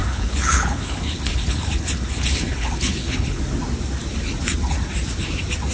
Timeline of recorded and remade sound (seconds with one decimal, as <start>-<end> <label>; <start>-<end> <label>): 0.0-3.4 remade; 3.4-5.7 recorded